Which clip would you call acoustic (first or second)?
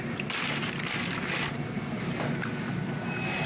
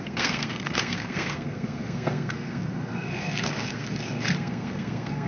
first